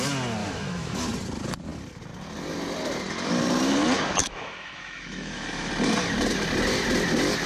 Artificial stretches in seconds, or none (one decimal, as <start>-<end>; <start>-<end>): 0.4-1.0; 4.2-5.7